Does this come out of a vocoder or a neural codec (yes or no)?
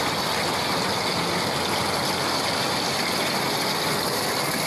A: no